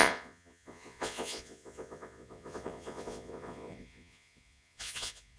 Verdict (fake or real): fake